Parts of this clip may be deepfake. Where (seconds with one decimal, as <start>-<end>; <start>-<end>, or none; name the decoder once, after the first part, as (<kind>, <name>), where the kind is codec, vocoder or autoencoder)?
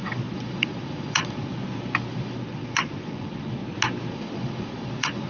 0.0-1.5 (vocoder, Vocos); 2.1-3.6; 4.1-5.3